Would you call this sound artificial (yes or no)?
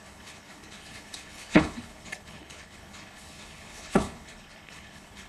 yes